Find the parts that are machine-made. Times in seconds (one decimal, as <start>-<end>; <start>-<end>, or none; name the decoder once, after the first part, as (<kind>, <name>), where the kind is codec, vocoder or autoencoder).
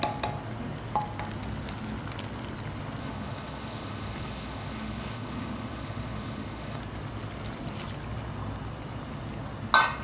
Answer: 3.0-6.8 (autoencoder, DAC-VAE)